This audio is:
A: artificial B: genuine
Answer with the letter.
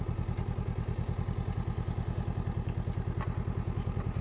B